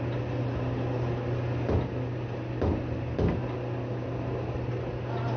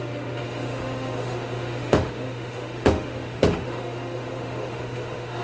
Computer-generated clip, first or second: second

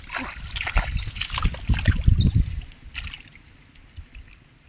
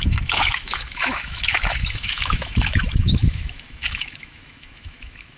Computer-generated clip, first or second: second